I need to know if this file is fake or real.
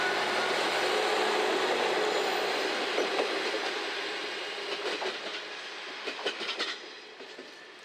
real